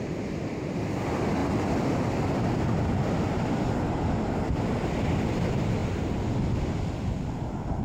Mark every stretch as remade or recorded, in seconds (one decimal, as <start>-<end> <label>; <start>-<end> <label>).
0.0-7.8 recorded